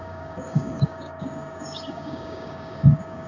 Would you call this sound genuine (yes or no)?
no